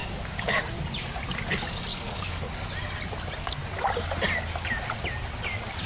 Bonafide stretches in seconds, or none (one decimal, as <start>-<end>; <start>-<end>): 0.6-1.9; 2.5-5.9